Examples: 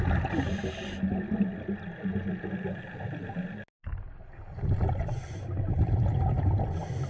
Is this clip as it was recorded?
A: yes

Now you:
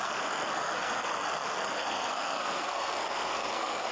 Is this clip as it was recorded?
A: no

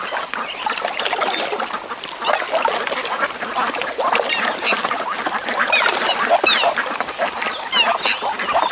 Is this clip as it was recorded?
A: yes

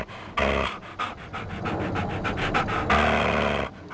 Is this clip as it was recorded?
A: yes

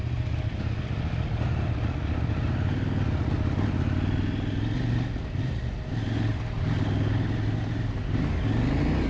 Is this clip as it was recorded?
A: yes